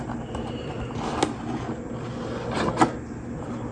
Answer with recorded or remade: recorded